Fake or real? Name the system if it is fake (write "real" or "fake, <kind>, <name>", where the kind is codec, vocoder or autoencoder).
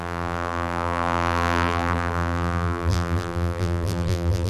fake, vocoder, BigVGAN v2